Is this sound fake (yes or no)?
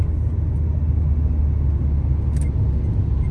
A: no